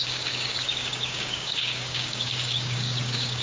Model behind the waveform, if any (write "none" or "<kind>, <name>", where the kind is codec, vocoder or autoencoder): codec, DAC